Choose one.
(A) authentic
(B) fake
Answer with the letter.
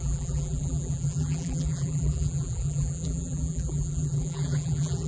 B